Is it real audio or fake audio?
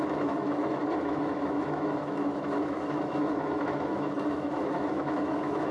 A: fake